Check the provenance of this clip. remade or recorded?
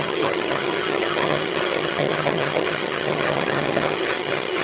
remade